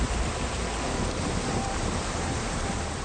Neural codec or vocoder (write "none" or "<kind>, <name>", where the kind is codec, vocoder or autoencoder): vocoder, BigVGAN v2